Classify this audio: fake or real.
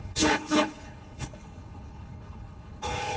fake